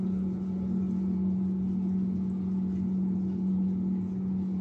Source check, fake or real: fake